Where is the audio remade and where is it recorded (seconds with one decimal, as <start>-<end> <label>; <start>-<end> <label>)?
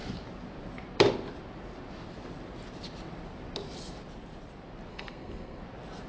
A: 0.0-4.9 recorded; 4.9-5.6 remade; 5.6-6.1 recorded